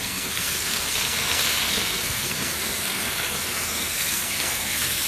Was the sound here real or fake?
fake